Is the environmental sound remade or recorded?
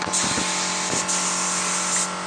recorded